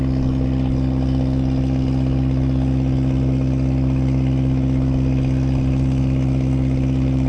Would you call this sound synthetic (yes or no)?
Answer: no